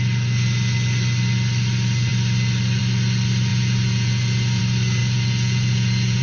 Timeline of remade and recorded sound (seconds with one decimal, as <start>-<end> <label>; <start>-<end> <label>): 0.0-3.5 recorded; 3.5-4.6 remade; 4.6-5.0 recorded; 5.0-6.2 remade